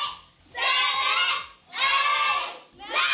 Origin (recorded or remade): recorded